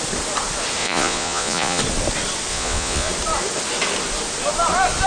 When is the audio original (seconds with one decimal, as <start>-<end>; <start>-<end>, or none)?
0.0-0.8; 1.8-2.5; 3.1-5.1